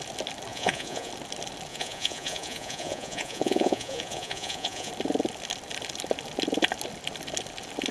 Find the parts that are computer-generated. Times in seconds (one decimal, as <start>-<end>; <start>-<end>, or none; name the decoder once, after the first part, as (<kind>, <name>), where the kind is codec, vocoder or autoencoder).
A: 0.5-1.1 (vocoder, Vocos); 1.7-4.9